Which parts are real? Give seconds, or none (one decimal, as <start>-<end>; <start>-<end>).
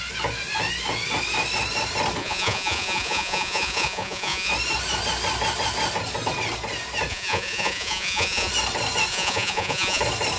0.0-2.2; 4.5-7.1; 8.5-9.1; 10.0-10.4